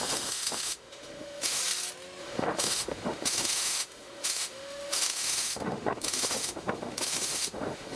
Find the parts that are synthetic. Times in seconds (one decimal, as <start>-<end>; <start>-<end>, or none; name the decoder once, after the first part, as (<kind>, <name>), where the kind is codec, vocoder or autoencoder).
0.0-1.6 (autoencoder, DAC-VAE); 2.2-8.0